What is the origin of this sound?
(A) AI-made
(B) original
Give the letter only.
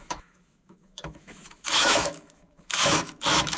A